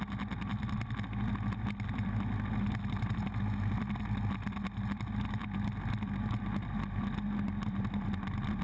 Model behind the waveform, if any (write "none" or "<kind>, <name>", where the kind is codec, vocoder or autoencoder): none